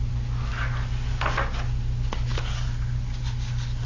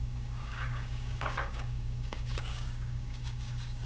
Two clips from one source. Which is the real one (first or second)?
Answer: first